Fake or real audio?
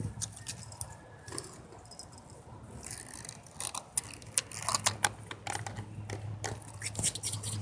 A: real